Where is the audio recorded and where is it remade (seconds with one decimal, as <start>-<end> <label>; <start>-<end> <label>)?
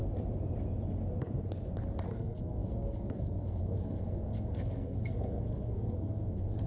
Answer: 0.0-2.1 recorded; 2.1-6.7 remade